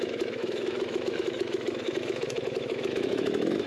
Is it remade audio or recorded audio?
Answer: remade